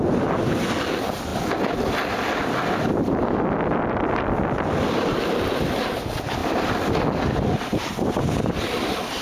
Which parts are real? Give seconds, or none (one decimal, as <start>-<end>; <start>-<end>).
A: 0.0-6.4; 7.2-9.2